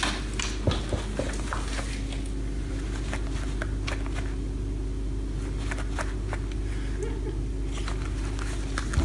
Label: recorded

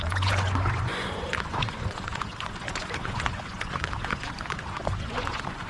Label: remade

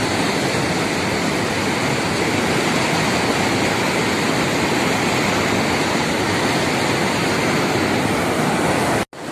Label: recorded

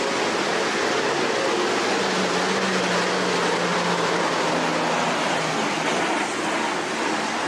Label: recorded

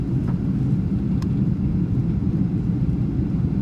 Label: recorded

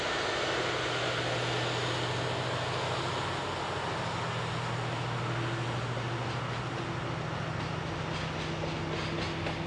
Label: recorded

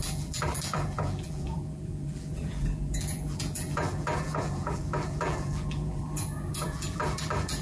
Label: remade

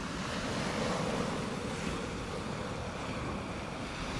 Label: recorded